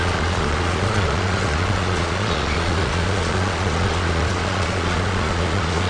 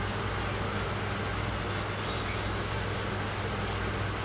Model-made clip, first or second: first